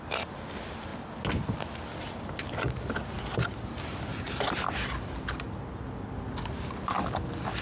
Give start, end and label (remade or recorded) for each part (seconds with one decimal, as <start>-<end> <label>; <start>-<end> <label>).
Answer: 0.0-7.6 recorded